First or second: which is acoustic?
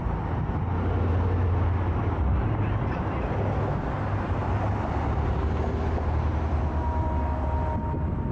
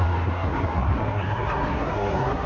first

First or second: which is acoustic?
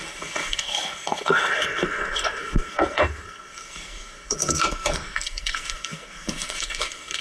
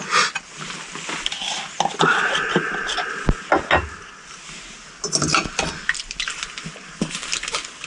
second